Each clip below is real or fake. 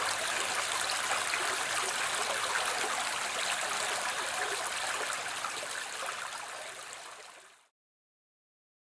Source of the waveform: real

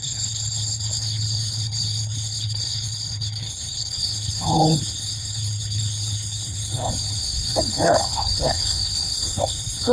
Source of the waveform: fake